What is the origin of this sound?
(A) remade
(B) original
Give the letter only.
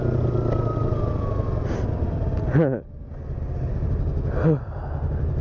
B